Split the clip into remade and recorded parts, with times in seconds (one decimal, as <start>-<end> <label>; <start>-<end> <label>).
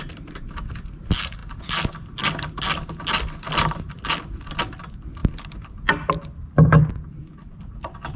0.0-8.2 recorded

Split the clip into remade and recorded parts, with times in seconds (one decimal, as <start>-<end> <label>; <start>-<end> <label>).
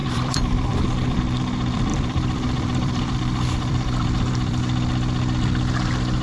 0.0-1.2 remade; 1.2-1.9 recorded; 1.9-4.6 remade; 4.6-6.2 recorded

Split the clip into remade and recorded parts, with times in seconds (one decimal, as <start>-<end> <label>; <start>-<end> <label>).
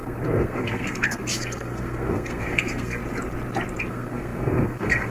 0.0-3.0 remade; 3.0-3.9 recorded; 3.9-5.1 remade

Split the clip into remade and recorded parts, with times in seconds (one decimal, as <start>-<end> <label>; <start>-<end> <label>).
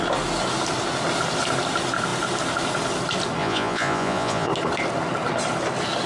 0.0-3.4 recorded; 3.4-4.5 remade; 4.5-6.1 recorded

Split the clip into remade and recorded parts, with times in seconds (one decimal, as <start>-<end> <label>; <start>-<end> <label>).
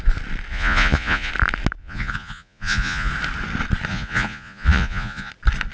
0.0-0.5 recorded; 0.5-1.3 remade; 1.3-1.8 recorded; 1.8-3.1 remade; 3.1-3.9 recorded; 3.9-5.3 remade; 5.3-5.7 recorded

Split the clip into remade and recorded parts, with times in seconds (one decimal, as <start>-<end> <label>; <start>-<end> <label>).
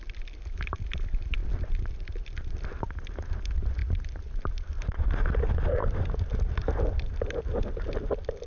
0.0-1.4 recorded; 1.4-2.5 remade; 2.5-3.8 recorded; 3.8-4.3 remade; 4.3-8.5 recorded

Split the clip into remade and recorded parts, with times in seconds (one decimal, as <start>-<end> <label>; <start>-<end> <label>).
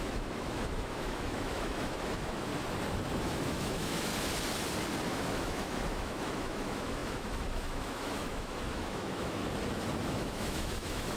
0.0-2.5 remade; 2.5-3.2 recorded; 3.2-4.1 remade; 4.1-5.1 recorded; 5.1-9.4 remade; 9.4-10.1 recorded; 10.1-11.2 remade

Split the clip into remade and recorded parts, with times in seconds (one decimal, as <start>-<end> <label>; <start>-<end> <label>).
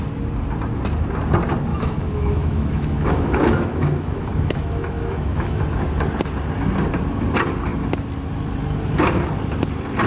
0.0-1.7 recorded; 1.7-5.6 remade; 5.6-10.1 recorded